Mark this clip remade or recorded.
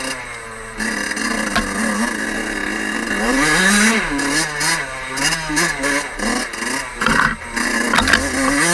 recorded